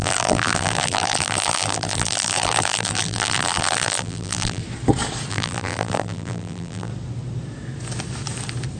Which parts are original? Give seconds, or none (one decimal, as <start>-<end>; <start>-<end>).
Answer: 4.6-5.3; 6.9-8.8